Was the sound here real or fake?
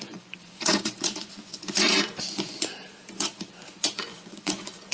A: fake